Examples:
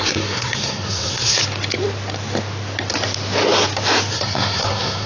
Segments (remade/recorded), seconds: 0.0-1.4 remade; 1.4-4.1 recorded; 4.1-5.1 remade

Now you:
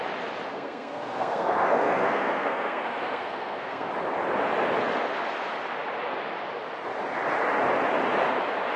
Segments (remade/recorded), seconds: 0.0-0.5 recorded; 0.5-3.9 remade; 3.9-8.8 recorded

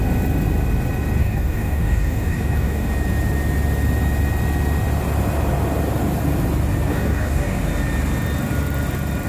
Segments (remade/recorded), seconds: 0.0-1.2 recorded; 1.2-2.9 remade; 2.9-6.9 recorded; 6.9-7.6 remade; 7.6-9.3 recorded

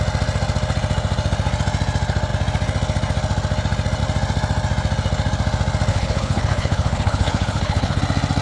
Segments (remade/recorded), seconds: 0.0-5.9 recorded; 5.9-8.0 remade; 8.0-8.4 recorded

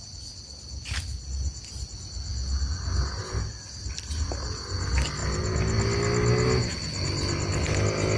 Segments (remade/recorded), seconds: 0.0-8.2 recorded

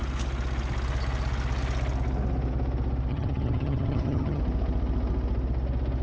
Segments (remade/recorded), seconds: 0.0-3.1 recorded; 3.1-4.4 remade; 4.4-6.0 recorded

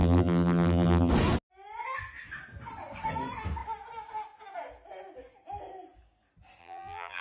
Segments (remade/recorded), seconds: 0.0-1.1 remade; 1.1-6.6 recorded; 6.6-7.2 remade